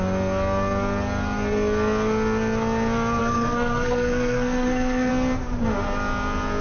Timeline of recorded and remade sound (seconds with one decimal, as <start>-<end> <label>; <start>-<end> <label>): 0.0-3.2 recorded; 3.2-5.1 remade; 5.1-6.6 recorded